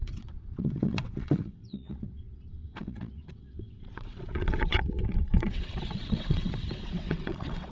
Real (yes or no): no